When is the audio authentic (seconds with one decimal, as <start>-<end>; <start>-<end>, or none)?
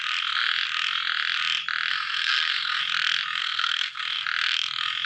0.0-1.9; 2.8-3.4; 4.0-5.1